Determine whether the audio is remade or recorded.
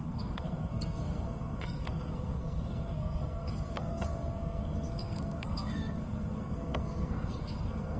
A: remade